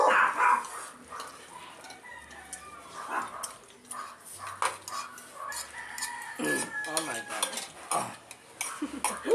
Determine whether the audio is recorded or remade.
recorded